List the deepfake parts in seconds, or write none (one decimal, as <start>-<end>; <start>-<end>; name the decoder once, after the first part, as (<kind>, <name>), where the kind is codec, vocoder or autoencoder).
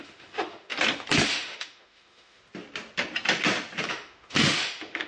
0.0-0.7 (autoencoder, DAC-VAE); 1.3-2.4; 3.9-5.1